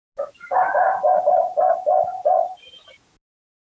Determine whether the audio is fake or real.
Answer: real